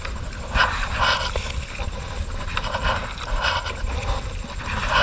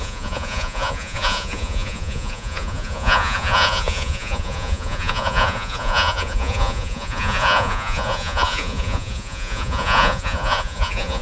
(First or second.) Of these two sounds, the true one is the first